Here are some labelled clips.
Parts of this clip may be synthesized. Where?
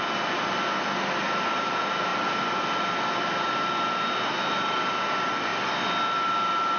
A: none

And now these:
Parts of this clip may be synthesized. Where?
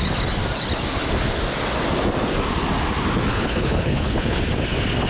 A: 3.3-4.4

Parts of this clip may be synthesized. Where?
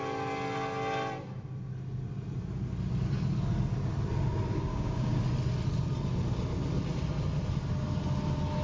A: 4.7-5.2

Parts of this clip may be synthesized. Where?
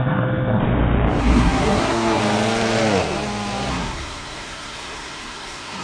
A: 0.0-0.6; 1.2-2.2; 3.7-5.8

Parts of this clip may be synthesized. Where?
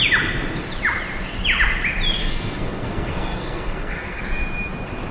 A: 2.2-4.2